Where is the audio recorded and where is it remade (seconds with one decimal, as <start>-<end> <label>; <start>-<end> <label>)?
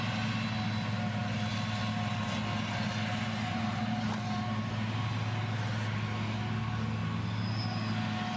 0.0-3.5 recorded; 3.5-4.7 remade; 4.7-8.4 recorded